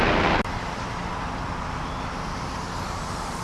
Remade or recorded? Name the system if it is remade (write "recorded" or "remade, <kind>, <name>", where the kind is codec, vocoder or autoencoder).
recorded